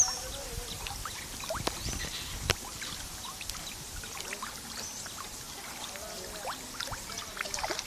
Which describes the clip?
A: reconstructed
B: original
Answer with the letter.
B